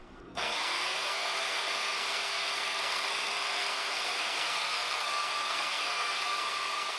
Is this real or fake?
fake